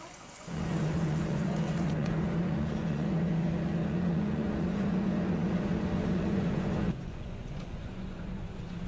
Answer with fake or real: fake